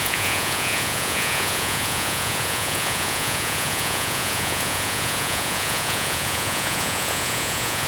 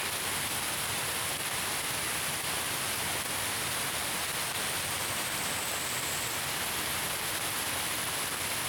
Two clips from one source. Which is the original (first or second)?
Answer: second